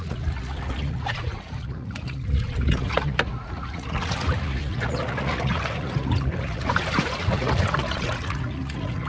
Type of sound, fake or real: fake